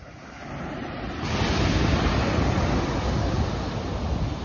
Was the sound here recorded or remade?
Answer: recorded